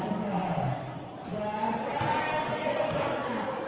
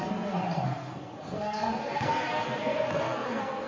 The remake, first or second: second